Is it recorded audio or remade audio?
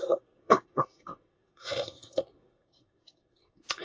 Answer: remade